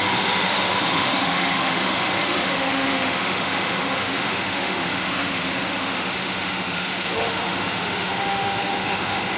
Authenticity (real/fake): fake